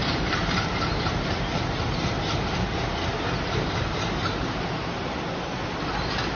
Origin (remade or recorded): remade